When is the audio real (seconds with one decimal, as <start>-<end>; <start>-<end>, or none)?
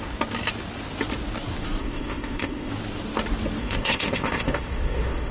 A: 0.0-1.8; 2.7-3.6